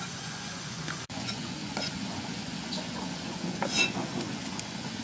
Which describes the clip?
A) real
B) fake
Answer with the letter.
B